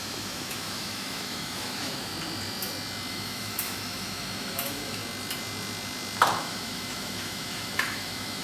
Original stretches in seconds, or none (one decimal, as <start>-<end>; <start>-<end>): 2.1-3.1; 5.0-6.4